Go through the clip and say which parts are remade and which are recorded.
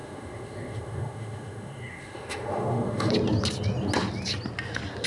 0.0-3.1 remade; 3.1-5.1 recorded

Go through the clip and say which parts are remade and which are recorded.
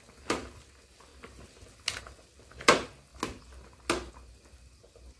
0.0-5.2 recorded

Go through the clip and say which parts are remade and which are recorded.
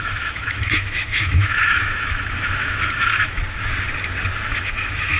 0.0-3.4 remade; 3.4-4.5 recorded; 4.5-5.2 remade